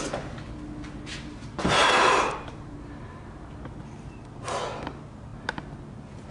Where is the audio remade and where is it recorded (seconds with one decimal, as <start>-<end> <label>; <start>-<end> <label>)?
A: 0.0-1.8 recorded; 1.8-4.2 remade; 4.2-6.3 recorded